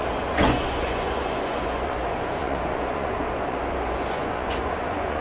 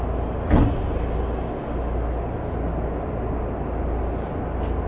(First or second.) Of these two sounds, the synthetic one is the first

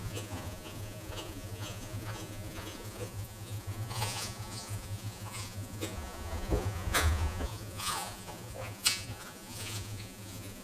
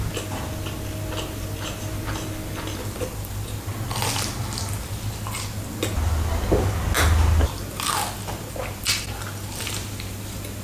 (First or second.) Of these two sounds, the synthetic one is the first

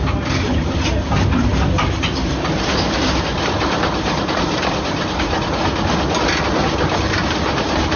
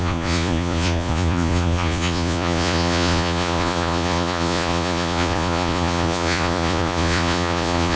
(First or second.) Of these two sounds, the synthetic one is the second